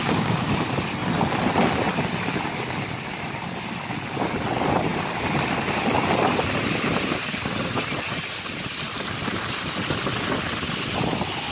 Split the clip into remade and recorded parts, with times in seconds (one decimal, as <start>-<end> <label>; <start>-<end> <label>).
0.0-0.5 remade; 0.5-11.5 recorded